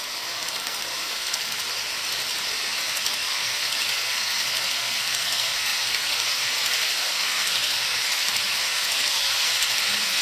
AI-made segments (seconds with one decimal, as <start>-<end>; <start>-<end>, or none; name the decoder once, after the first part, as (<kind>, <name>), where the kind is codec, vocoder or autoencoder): 0.0-1.6 (codec, SNAC); 2.5-10.2